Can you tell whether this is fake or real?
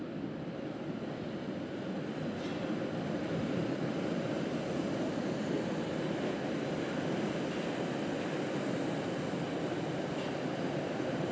real